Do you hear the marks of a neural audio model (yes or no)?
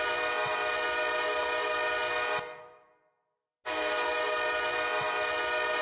no